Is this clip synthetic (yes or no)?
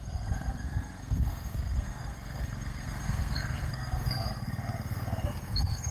yes